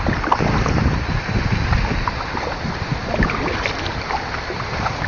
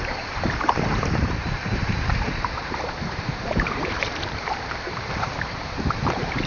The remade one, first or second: second